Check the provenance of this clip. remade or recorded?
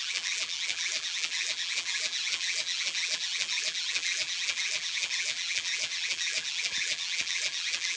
remade